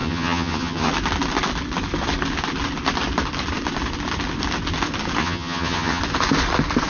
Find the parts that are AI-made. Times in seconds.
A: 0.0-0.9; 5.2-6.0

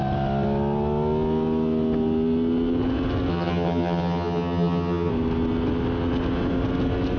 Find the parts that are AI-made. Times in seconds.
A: 3.3-5.1

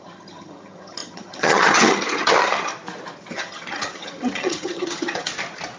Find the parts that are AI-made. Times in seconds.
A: 0.0-2.7; 3.3-5.3

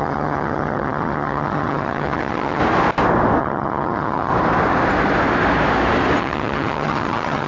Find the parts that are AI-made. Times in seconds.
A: 0.0-2.6; 3.4-4.3; 6.2-7.5

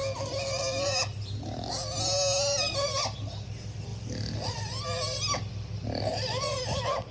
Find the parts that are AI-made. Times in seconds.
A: none

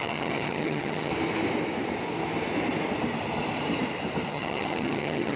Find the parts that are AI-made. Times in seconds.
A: 0.0-1.1; 4.3-5.4

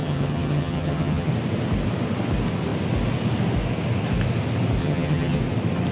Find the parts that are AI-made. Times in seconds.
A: 0.0-1.3; 4.8-5.4